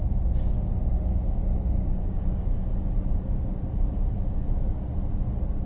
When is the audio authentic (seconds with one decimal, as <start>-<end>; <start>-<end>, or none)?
0.0-5.7